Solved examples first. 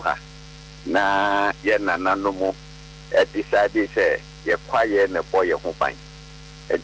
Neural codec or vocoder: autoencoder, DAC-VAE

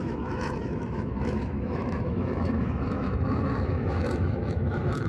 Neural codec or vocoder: autoencoder, DAC-VAE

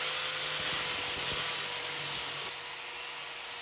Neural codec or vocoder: none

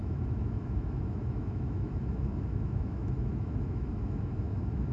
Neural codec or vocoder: autoencoder, DAC-VAE